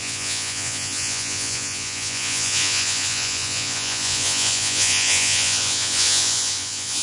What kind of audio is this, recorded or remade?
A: remade